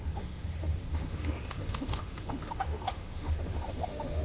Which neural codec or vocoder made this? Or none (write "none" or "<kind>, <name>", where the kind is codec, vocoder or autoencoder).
autoencoder, DAC-VAE